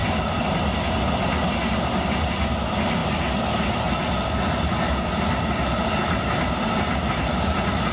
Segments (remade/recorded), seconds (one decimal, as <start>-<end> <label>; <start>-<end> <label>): 0.0-7.9 recorded